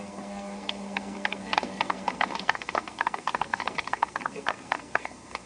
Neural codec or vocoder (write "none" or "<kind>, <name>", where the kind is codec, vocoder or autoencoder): codec, SNAC